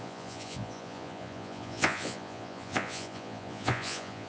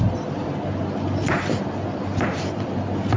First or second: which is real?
second